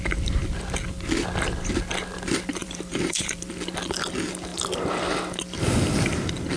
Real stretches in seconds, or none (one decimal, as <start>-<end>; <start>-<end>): 0.0-2.6; 3.4-6.6